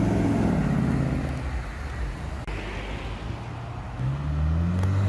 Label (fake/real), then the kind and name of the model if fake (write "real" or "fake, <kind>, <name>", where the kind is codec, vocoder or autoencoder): real